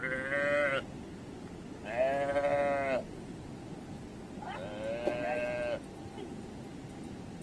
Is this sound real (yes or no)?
yes